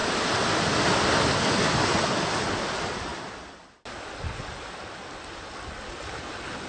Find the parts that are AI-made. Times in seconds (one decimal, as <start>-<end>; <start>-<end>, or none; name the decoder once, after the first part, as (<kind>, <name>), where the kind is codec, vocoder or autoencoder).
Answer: none